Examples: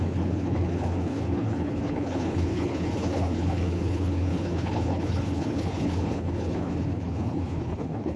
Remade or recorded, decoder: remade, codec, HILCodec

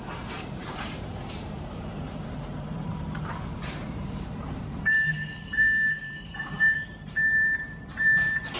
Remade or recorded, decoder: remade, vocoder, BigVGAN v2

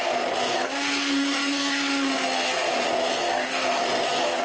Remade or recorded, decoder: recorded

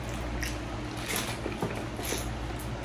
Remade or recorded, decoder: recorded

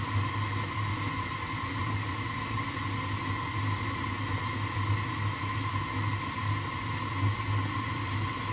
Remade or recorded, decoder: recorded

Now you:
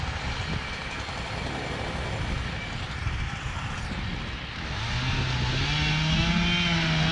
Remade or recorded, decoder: recorded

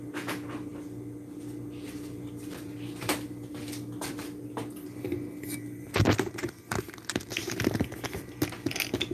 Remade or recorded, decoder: recorded